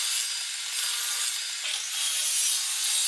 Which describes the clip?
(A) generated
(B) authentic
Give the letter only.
B